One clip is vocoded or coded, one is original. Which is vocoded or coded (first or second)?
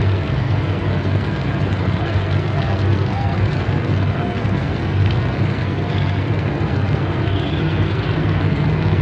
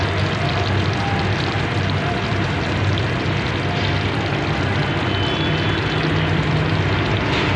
first